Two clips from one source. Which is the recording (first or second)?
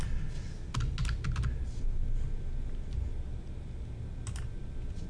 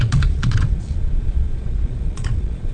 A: first